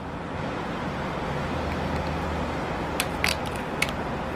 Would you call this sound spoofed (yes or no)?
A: no